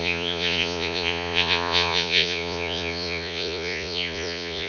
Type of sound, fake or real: fake